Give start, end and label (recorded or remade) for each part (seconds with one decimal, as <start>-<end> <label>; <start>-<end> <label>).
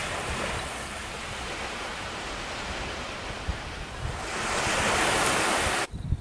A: 0.0-3.1 remade; 3.1-3.5 recorded; 3.5-4.3 remade; 4.3-6.2 recorded